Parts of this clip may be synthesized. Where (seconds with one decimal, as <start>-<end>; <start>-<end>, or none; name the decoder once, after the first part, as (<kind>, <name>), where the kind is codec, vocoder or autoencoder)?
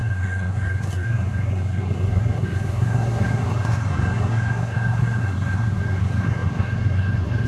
0.0-7.5 (codec, SNAC)